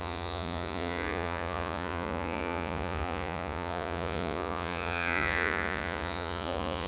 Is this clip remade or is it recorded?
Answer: remade